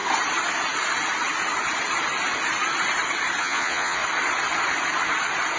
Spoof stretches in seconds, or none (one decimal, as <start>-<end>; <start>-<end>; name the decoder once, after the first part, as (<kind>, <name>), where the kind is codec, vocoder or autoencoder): 3.4-4.0 (vocoder, Vocos)